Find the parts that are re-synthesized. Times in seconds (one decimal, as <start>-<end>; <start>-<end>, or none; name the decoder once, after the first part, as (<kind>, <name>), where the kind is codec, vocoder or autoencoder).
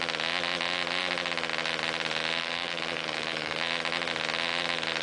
2.4-3.6 (codec, DAC)